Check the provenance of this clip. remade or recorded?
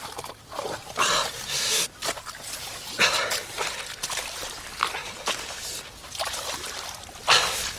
recorded